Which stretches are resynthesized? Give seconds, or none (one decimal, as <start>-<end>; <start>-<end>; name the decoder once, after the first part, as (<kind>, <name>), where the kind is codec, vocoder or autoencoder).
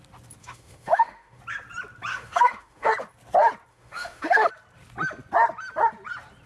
0.4-1.4 (autoencoder, DAC-VAE); 2.1-2.9; 3.7-4.5